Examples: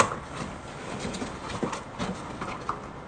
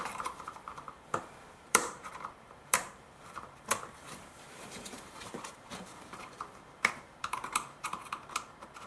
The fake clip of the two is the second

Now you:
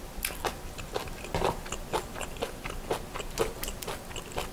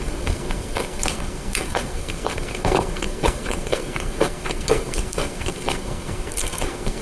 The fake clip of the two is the second